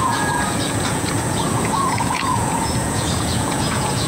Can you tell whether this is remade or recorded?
remade